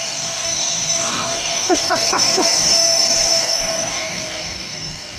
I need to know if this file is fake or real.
fake